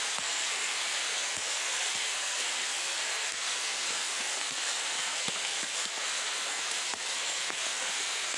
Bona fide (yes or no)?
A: no